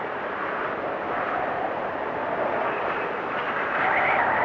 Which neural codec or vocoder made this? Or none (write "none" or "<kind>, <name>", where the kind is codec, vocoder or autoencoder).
none